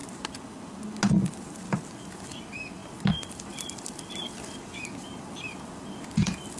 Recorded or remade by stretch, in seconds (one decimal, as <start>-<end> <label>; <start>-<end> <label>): 0.0-1.3 recorded; 1.3-6.6 remade